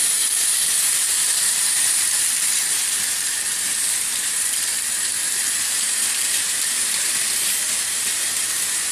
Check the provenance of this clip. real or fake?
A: fake